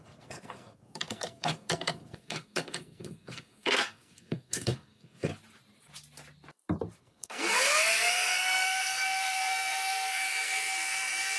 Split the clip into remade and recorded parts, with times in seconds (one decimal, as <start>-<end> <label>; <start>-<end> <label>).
0.0-5.3 remade; 5.3-7.0 recorded; 7.0-11.4 remade